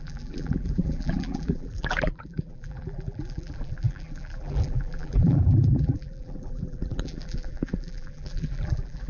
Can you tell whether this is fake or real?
fake